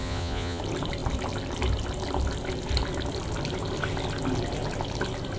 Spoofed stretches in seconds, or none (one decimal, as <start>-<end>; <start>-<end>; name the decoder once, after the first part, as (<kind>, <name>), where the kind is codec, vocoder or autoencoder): 0.0-0.6 (vocoder, Vocos)